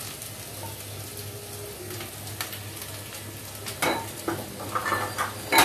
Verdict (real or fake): real